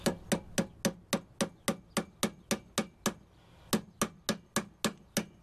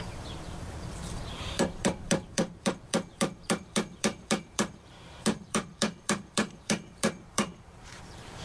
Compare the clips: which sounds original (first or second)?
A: first